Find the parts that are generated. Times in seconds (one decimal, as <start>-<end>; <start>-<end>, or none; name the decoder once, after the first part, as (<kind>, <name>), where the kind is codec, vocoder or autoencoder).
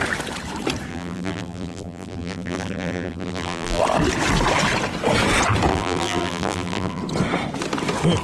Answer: 0.9-3.8 (vocoder, BigVGAN v2); 5.7-7.0